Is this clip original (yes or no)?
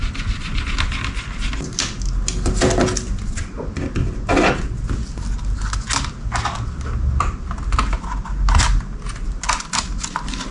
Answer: yes